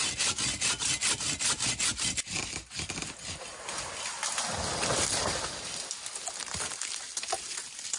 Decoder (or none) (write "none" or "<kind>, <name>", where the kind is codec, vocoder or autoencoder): none